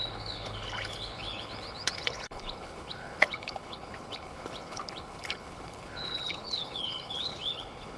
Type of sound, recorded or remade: remade